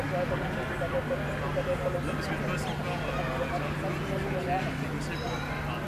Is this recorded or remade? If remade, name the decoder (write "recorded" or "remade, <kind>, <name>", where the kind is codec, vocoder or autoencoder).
recorded